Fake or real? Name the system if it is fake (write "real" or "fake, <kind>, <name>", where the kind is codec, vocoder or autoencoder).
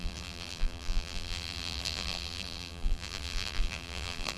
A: fake, vocoder, BigVGAN v2